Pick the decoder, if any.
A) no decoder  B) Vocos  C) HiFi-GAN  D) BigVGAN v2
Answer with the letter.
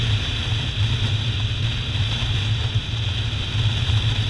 A